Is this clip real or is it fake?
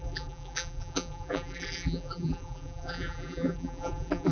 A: fake